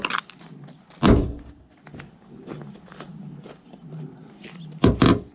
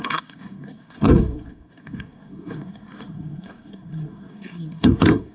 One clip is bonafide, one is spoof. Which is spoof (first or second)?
second